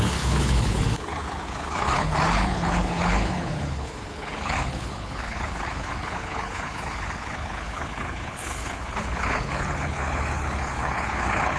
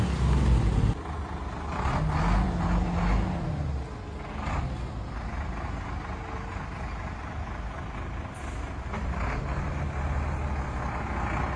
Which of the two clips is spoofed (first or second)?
first